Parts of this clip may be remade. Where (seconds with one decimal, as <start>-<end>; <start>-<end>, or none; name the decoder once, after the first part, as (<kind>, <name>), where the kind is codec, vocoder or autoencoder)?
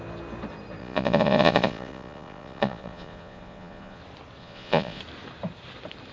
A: 0.8-4.0 (vocoder, Vocos); 4.4-5.0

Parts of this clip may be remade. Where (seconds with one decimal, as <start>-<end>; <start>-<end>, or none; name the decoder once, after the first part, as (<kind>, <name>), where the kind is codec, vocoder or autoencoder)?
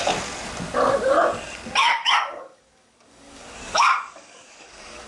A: 1.8-5.1 (codec, DAC)